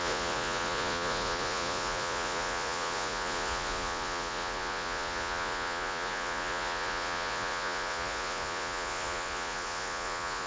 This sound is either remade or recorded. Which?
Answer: remade